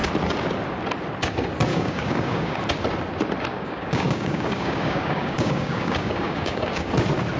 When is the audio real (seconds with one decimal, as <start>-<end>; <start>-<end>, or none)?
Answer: 0.0-1.7; 2.6-3.5; 6.9-7.4